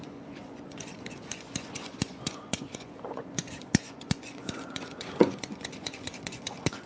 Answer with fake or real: fake